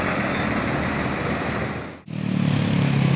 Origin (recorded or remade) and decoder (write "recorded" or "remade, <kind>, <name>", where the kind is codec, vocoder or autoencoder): recorded